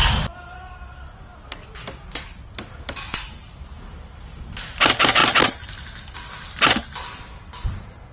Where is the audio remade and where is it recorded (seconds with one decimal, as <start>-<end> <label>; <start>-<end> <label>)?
0.0-8.1 recorded